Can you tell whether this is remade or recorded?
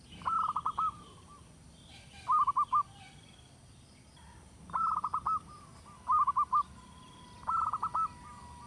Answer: recorded